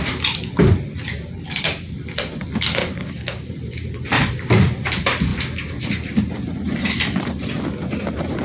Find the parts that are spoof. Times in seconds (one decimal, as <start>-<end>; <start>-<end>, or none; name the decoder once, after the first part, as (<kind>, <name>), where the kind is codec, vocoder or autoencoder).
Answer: 2.8-3.5 (codec, DAC)